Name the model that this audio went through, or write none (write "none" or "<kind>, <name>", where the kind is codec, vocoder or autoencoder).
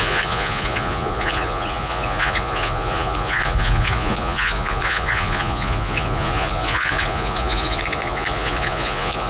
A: vocoder, Vocos